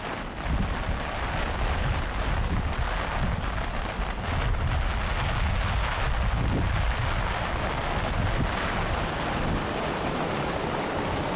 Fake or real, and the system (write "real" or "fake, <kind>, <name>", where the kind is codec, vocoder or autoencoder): real